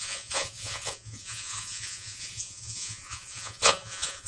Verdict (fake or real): fake